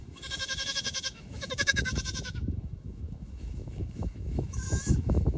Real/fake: fake